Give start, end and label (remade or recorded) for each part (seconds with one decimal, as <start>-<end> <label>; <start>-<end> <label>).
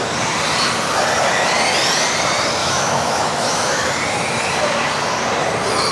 0.0-2.6 recorded; 2.6-3.9 remade; 3.9-5.9 recorded